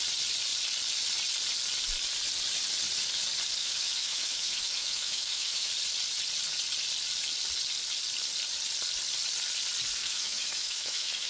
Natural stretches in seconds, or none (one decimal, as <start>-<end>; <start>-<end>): 0.0-3.6; 5.7-10.0